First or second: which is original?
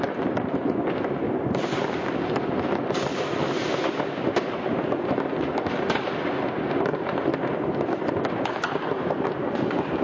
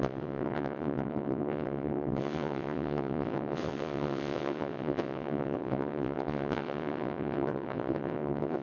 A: first